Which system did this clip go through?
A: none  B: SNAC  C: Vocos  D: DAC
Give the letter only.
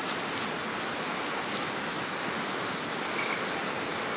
A